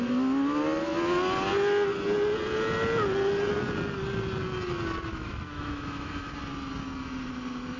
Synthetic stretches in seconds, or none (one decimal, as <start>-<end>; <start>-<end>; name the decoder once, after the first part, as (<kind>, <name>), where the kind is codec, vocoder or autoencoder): 5.1-6.3 (autoencoder, DAC-VAE)